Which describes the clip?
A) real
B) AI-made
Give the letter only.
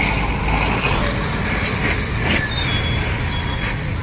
A